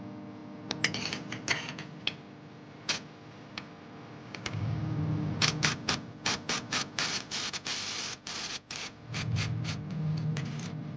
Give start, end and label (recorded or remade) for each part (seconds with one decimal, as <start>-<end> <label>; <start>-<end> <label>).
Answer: 0.0-4.2 recorded; 4.2-4.8 remade; 4.8-11.0 recorded